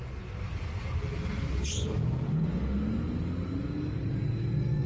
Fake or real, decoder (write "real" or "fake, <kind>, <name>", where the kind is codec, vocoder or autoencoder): real